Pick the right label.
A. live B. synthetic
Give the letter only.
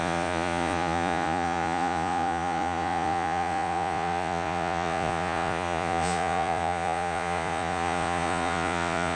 B